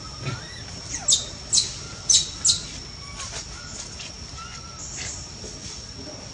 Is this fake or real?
real